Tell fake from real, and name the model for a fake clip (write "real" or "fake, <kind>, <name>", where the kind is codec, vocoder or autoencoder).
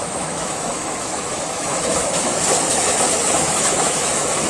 fake, autoencoder, DAC-VAE